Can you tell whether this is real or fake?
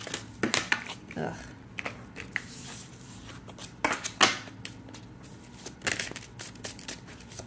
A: real